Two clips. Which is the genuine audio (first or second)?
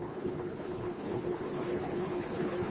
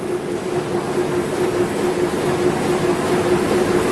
second